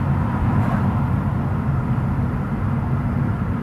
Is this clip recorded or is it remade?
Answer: recorded